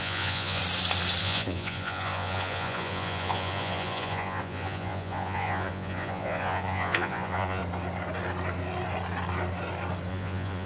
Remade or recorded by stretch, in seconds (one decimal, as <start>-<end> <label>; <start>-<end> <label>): 0.0-0.6 remade; 0.6-1.2 recorded; 1.2-7.6 remade; 7.6-10.1 recorded; 10.1-10.7 remade

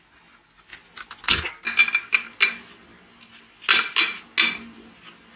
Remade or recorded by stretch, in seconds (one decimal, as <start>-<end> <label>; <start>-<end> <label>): 0.0-5.4 recorded

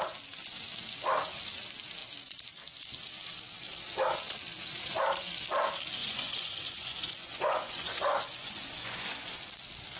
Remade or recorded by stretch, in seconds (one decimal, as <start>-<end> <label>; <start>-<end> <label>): 0.0-6.0 recorded; 6.0-9.4 remade; 9.4-10.0 recorded